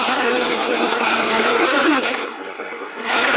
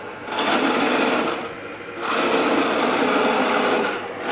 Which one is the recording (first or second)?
second